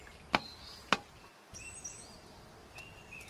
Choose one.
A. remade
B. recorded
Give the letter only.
B